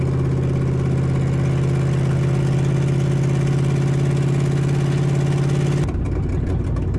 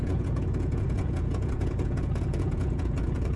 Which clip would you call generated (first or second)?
second